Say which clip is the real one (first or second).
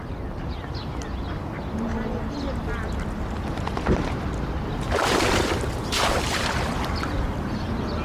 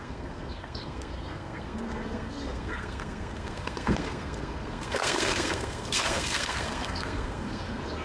first